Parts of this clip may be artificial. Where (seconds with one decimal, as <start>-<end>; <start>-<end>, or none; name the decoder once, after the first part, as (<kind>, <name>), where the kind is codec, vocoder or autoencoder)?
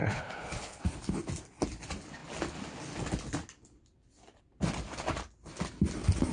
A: 0.0-0.8 (codec, HILCodec)